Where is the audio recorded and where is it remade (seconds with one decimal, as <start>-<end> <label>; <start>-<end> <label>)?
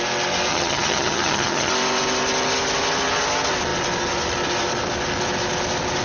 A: 0.0-0.5 recorded; 0.5-1.7 remade; 1.7-6.0 recorded